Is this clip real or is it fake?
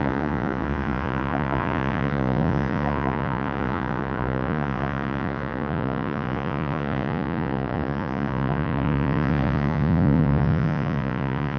fake